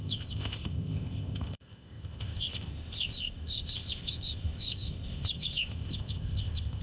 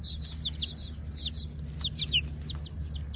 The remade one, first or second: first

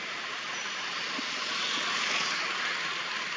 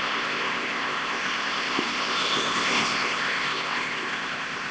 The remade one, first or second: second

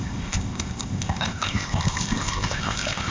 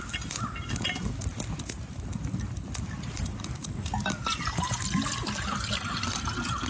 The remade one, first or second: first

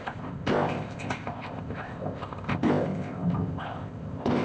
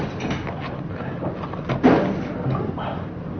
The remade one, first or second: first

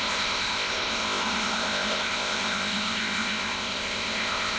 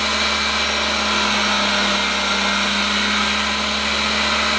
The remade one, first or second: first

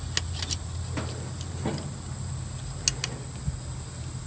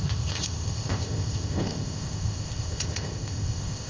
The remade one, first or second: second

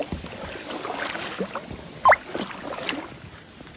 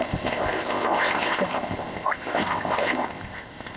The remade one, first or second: second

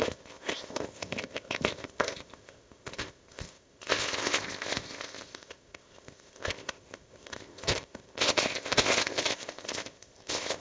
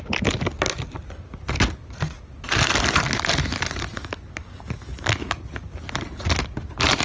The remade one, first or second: first